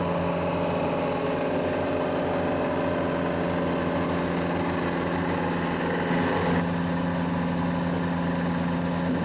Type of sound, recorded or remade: recorded